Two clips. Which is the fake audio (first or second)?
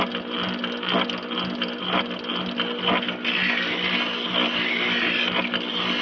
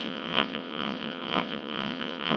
second